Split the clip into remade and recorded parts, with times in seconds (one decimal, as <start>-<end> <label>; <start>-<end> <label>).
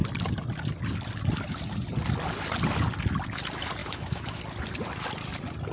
0.0-3.8 recorded; 3.8-4.4 remade; 4.4-5.7 recorded